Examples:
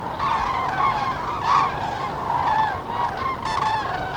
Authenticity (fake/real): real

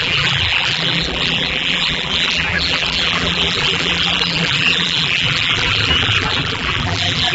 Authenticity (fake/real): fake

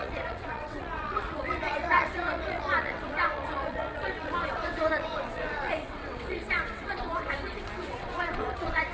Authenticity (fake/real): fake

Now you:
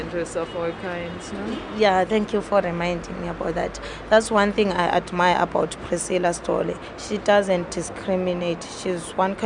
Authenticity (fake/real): real